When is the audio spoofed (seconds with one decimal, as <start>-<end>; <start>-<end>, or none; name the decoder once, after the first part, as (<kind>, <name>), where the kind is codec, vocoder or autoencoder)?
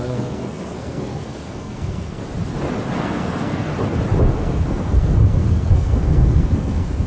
0.0-2.2 (codec, SNAC); 3.0-3.7; 4.3-7.1